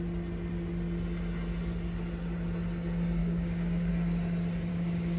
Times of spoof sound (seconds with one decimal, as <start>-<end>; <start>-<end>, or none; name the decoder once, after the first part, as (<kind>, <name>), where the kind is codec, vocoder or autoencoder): 3.2-3.9 (codec, DAC); 4.7-5.2

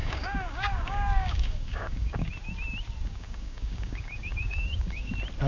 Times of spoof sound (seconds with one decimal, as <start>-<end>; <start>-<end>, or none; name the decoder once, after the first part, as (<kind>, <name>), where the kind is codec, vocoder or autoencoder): 0.0-2.3 (codec, DAC); 3.0-5.1

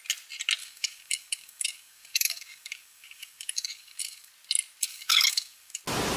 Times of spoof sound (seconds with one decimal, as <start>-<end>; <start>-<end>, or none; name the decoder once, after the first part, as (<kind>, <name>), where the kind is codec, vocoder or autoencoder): 0.6-4.3 (codec, DAC); 4.9-5.8

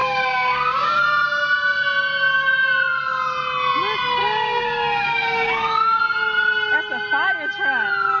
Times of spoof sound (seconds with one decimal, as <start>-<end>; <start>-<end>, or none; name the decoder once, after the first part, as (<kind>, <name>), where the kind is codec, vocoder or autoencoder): 0.0-1.0 (codec, DAC); 4.2-6.0

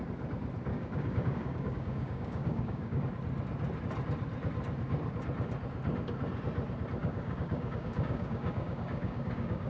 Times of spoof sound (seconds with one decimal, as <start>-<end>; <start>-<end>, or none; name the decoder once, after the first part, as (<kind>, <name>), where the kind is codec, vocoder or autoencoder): 0.7-3.0 (codec, DAC); 7.0-9.7